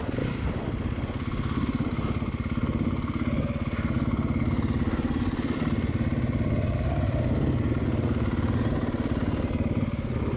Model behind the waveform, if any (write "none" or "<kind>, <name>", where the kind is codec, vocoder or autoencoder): none